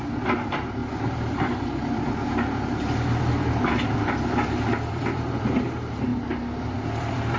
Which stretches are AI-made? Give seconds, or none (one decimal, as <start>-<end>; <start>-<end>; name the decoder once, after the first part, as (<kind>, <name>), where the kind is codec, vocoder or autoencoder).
0.0-6.1 (vocoder, BigVGAN v2); 6.6-7.4